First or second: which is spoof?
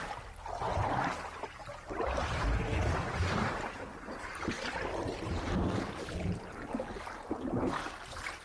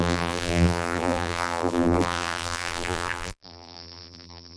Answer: second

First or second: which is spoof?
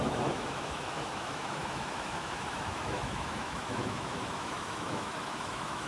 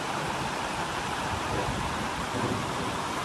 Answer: first